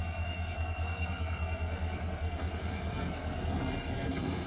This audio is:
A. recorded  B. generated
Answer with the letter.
B